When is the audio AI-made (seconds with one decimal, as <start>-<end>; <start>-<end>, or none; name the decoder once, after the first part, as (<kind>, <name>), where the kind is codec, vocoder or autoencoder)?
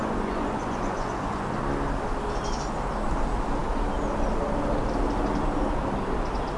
0.0-1.6 (vocoder, Vocos)